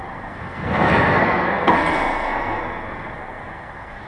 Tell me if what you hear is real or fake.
fake